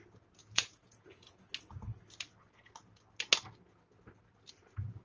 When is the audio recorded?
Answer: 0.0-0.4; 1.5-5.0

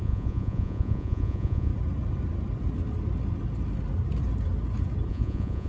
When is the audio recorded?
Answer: 1.7-5.1

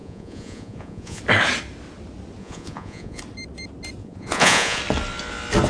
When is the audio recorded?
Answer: 1.2-2.4; 3.2-4.0; 4.8-5.7

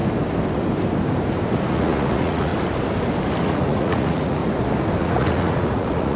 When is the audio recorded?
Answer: 0.0-1.7; 2.5-3.4; 4.4-5.0

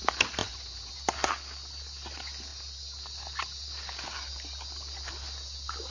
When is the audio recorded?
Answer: 0.0-0.4; 0.9-5.9

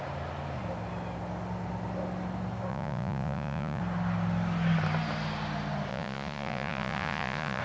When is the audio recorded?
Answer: 0.0-2.7; 3.8-5.9

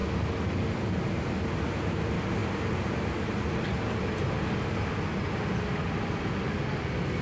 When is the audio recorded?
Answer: 0.0-7.2

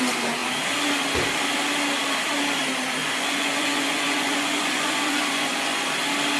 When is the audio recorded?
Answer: 0.0-3.0; 5.9-6.4